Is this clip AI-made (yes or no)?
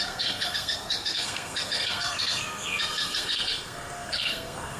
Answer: yes